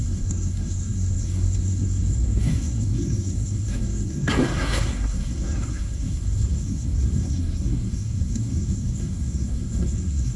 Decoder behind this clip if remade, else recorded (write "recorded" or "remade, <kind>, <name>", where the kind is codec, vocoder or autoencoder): remade, codec, SNAC